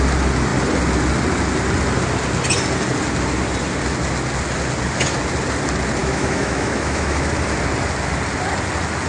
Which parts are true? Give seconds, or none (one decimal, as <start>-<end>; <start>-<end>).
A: 0.0-6.0; 7.3-9.1